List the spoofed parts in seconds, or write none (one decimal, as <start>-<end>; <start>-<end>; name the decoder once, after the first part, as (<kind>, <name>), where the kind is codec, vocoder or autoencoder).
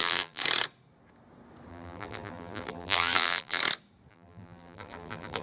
0.0-0.4 (vocoder, BigVGAN v2); 1.7-3.6; 4.1-5.4